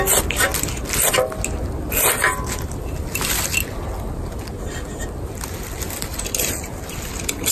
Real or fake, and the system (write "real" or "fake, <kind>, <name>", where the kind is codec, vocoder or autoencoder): real